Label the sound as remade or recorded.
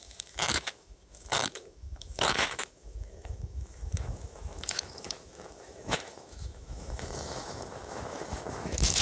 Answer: remade